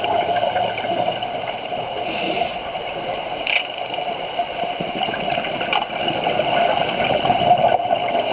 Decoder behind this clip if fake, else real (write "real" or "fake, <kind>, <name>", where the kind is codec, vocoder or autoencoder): real